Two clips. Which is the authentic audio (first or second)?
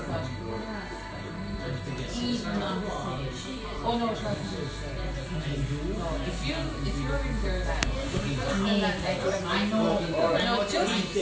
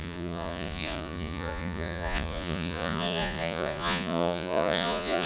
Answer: first